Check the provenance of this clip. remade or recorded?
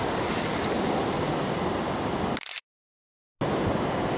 recorded